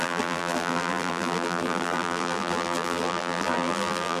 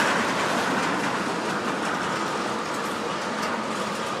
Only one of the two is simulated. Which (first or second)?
first